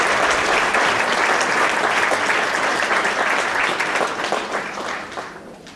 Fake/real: real